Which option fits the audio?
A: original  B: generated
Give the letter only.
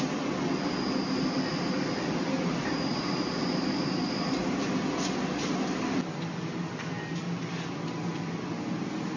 A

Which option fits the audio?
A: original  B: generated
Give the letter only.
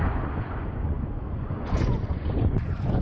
B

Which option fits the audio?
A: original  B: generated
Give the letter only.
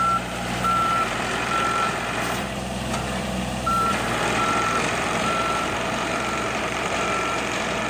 B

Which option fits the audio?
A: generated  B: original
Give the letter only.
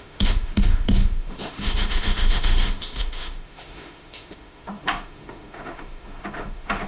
A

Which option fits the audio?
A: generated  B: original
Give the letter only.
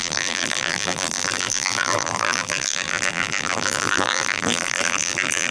A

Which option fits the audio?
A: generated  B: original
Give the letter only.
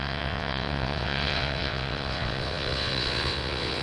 A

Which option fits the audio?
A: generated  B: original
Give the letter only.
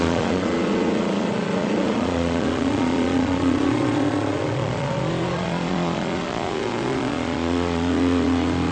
A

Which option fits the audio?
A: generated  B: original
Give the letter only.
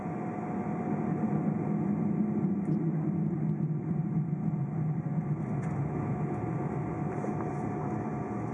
B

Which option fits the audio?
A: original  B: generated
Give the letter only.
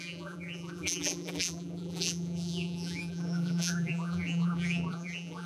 B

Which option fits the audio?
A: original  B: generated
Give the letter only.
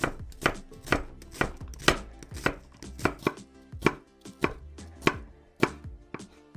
A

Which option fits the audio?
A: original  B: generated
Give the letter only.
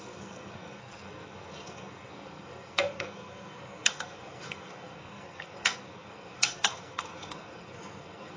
B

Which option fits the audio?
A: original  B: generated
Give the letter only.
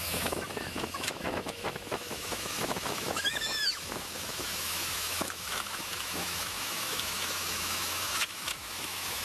B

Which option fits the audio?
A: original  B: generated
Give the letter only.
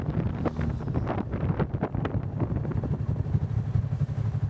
A